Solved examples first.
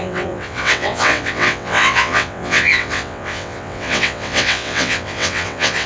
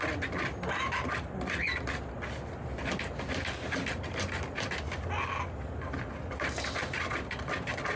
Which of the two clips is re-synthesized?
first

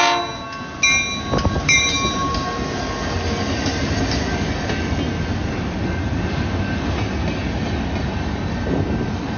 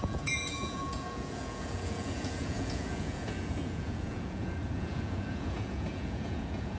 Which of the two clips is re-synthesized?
second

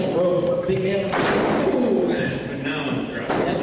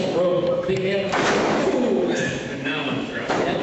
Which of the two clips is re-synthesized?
second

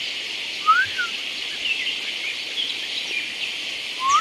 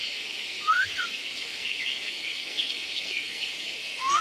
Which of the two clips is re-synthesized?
second